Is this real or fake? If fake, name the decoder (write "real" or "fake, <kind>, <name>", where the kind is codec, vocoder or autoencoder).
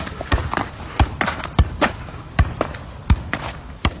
real